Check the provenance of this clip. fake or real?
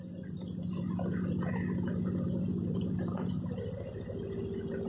real